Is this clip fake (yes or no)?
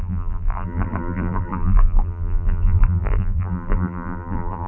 yes